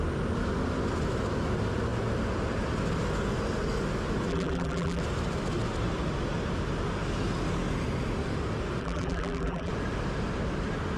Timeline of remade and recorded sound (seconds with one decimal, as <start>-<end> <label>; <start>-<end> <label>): 0.0-4.3 recorded; 4.3-5.0 remade; 5.0-8.8 recorded; 8.8-9.7 remade; 9.7-11.0 recorded